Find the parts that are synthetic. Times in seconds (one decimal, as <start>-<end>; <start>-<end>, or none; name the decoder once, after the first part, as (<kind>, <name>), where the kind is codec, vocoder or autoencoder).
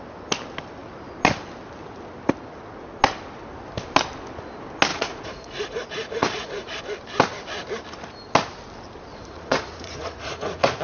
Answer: 4.9-6.8 (vocoder, Vocos); 9.1-10.8